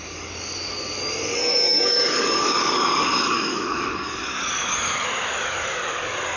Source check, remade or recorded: remade